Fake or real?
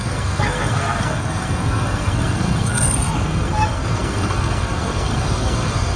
fake